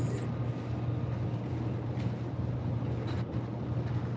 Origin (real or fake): real